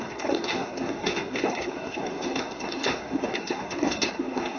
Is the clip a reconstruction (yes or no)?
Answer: yes